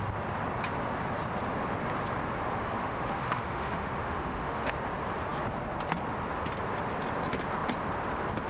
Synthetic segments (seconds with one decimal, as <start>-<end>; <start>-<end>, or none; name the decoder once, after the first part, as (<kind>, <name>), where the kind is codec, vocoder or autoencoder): 2.8-4.7 (autoencoder, DAC-VAE)